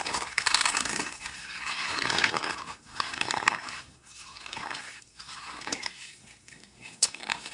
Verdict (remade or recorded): remade